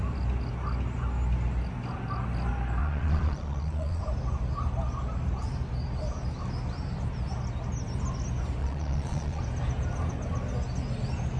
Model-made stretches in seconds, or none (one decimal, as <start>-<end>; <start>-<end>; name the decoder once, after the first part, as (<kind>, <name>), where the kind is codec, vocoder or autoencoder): 2.8-4.0 (vocoder, Vocos); 8.6-9.4